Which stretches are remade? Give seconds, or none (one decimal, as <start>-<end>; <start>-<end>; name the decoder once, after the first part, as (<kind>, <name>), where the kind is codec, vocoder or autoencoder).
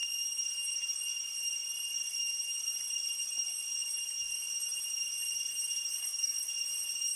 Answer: 6.0-6.5 (codec, DAC)